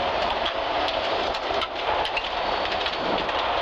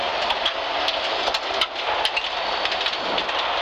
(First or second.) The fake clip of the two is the first